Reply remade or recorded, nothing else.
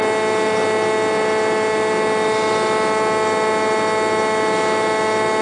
recorded